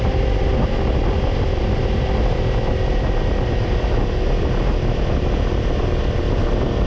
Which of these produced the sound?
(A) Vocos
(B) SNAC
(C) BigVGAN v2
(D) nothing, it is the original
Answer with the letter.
D